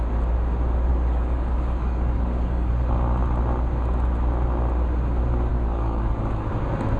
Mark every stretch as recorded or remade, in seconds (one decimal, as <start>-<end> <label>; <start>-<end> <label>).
0.0-0.9 recorded; 0.9-2.7 remade; 2.7-5.5 recorded; 5.5-6.5 remade; 6.5-7.0 recorded